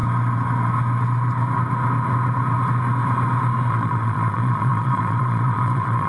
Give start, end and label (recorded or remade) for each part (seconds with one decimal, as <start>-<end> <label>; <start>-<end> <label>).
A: 0.0-3.7 recorded; 3.7-6.1 remade